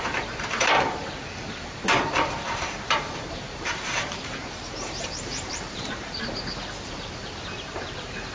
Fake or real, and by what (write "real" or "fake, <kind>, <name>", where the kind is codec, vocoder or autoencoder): fake, vocoder, BigVGAN v2